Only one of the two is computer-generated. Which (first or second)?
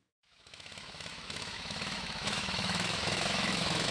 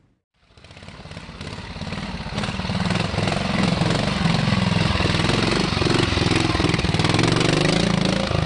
first